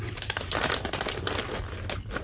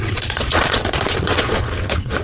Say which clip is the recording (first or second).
first